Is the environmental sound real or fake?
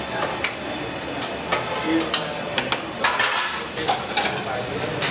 real